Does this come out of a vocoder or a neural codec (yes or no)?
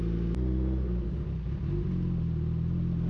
no